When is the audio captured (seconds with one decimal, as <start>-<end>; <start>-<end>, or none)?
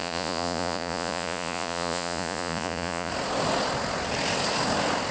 3.1-5.1